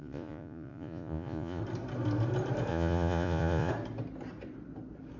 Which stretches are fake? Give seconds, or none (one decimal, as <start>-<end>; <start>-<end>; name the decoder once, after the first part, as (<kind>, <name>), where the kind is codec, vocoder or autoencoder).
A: 0.0-1.6 (vocoder, Vocos); 2.7-3.7